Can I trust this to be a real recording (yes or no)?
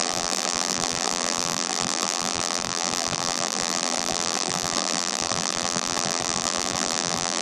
no